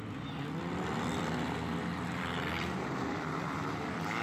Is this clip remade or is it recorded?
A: recorded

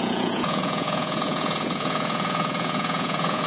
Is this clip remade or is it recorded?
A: remade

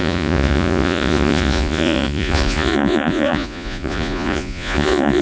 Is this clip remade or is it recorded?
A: remade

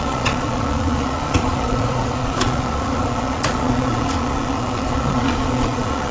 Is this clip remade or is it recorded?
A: remade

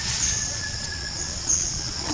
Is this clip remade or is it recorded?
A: remade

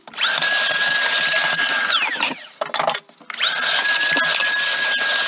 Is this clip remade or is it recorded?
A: recorded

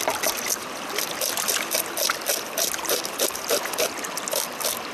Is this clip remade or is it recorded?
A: recorded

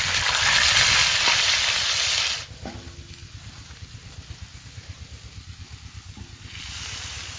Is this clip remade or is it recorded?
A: recorded